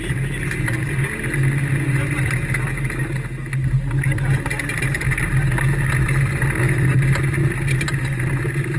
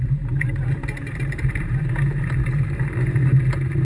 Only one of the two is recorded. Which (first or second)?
first